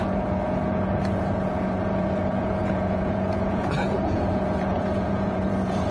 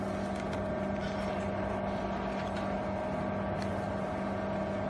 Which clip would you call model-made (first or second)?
first